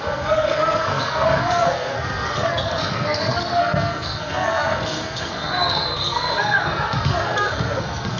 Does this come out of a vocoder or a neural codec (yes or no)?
yes